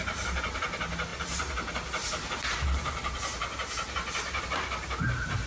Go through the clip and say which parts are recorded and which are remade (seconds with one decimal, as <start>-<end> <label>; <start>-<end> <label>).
0.0-5.5 remade

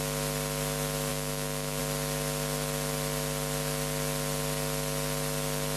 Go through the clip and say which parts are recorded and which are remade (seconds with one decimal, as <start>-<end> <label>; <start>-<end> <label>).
0.0-1.1 recorded; 1.1-1.8 remade; 1.8-5.8 recorded

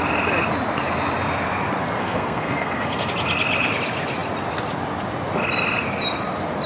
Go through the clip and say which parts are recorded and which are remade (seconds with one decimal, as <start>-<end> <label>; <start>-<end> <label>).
0.0-2.0 recorded; 2.0-3.1 remade; 3.1-6.7 recorded

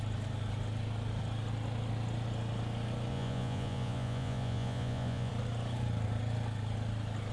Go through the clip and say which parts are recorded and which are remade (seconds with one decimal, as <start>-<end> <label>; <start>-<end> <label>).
0.0-3.1 recorded; 3.1-5.3 remade; 5.3-7.3 recorded